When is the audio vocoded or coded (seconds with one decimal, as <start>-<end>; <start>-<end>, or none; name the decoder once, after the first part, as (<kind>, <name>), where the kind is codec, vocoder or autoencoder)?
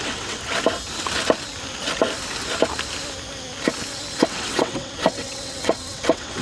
0.0-0.4 (vocoder, WaveNeXt); 4.2-6.4